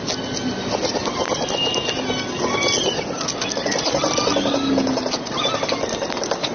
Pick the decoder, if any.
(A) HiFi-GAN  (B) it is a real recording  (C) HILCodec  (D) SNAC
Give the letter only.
B